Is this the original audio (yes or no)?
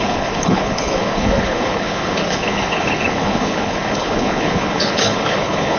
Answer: no